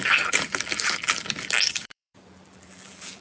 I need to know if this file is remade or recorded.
remade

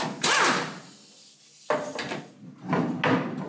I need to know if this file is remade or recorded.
recorded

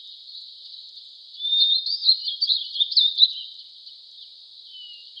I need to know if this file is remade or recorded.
recorded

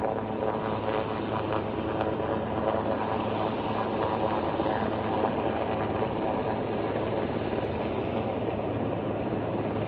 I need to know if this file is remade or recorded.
recorded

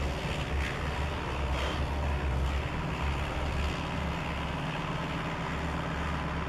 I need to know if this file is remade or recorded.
recorded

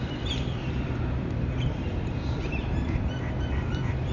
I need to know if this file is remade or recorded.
remade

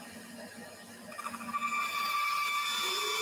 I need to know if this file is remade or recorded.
recorded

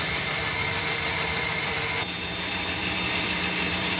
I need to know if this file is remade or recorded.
remade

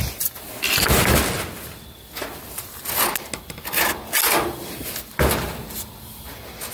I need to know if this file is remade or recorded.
recorded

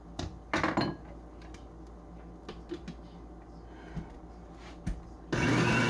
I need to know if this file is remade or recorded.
recorded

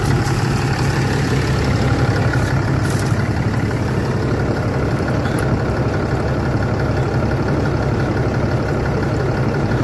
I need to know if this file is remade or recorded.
remade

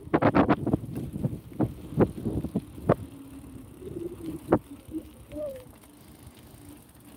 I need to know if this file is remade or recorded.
recorded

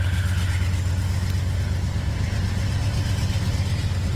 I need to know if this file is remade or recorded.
recorded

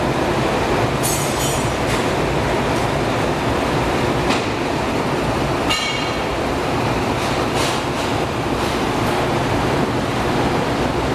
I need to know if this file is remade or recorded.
remade